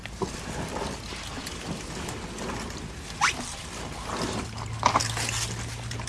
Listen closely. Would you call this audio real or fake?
real